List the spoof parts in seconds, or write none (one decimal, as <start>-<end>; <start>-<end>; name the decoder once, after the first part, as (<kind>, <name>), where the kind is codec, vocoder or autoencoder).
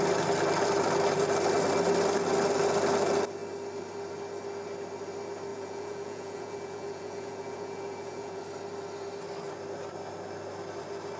5.5-8.4 (vocoder, Vocos)